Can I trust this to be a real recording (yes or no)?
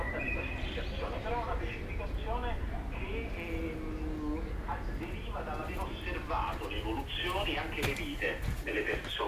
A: yes